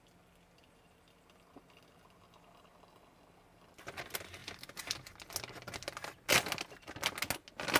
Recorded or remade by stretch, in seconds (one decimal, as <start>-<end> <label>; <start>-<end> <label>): 0.0-7.8 recorded